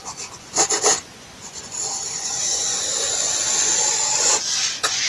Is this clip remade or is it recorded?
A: remade